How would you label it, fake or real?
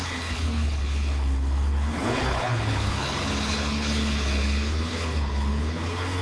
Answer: fake